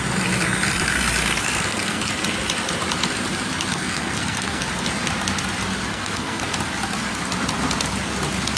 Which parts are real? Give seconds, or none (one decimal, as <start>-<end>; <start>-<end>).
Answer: 0.0-1.2; 2.1-3.7; 4.6-5.9; 6.4-8.6